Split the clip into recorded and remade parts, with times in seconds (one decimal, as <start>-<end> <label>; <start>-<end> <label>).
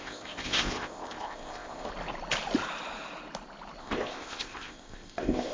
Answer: 0.0-1.9 remade; 1.9-3.8 recorded; 3.8-5.5 remade